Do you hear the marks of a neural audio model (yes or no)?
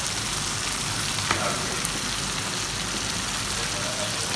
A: no